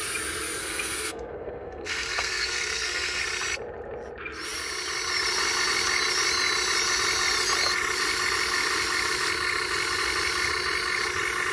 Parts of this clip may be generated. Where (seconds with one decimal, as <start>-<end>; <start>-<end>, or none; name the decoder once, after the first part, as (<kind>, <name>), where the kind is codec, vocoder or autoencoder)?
0.6-3.2 (codec, SNAC)